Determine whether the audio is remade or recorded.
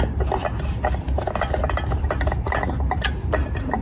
recorded